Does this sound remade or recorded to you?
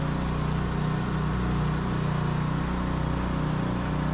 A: recorded